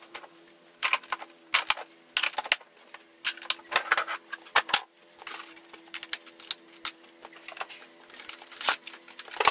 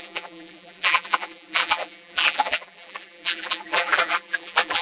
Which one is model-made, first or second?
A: second